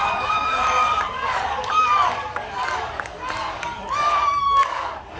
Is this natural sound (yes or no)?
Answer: no